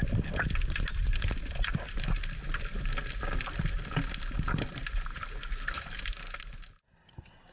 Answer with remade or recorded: recorded